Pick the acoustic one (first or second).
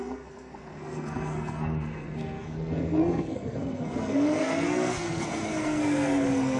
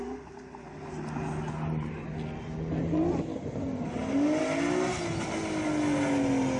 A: second